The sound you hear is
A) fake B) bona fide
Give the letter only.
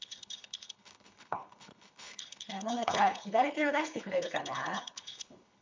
A